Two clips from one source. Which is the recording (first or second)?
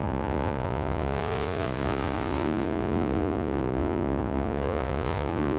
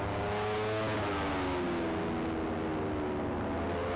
second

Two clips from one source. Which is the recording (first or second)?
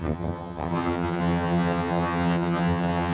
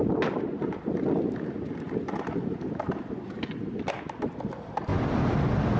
second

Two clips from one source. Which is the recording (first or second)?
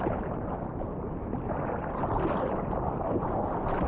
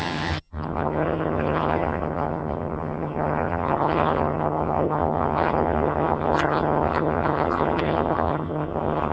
first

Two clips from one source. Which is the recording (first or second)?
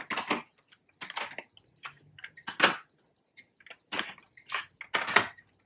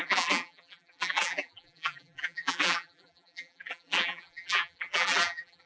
first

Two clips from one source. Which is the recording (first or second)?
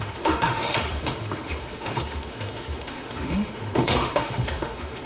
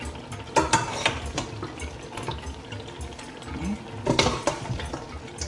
second